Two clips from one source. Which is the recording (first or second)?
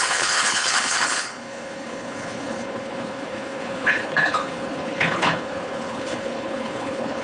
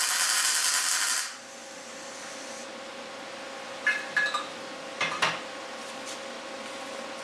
second